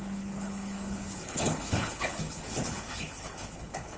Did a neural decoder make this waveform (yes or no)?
yes